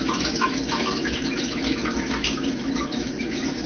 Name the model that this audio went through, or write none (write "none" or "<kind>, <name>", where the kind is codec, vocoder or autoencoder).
autoencoder, DAC-VAE